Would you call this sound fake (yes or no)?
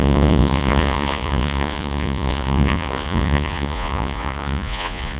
yes